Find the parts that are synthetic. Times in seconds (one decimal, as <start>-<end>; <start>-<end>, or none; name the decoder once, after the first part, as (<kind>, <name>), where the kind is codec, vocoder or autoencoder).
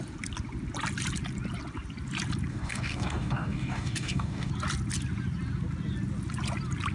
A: 2.5-4.5 (codec, DAC)